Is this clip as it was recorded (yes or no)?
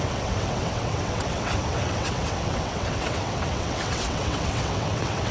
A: no